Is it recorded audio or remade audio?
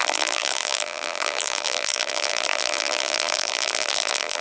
remade